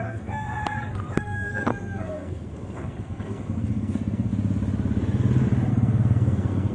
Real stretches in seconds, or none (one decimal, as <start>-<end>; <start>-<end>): 4.3-5.7

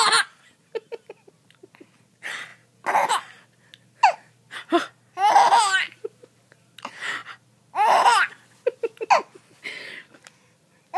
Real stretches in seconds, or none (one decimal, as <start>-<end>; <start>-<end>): 0.0-11.0